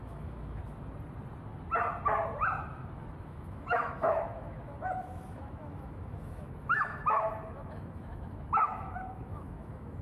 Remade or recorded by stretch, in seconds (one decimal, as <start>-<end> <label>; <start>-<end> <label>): 0.0-0.6 remade; 0.6-3.2 recorded; 3.2-10.0 remade